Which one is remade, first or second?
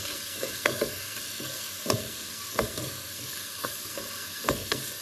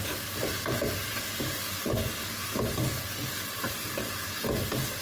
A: first